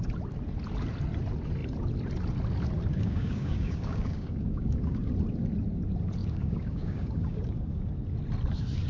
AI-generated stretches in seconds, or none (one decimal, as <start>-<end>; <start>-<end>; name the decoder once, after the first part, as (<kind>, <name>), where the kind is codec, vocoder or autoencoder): 2.9-5.1 (codec, DAC); 6.2-7.9